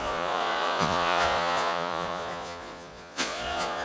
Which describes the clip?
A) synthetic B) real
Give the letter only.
A